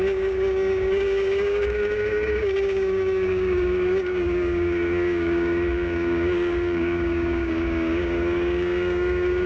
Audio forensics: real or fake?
fake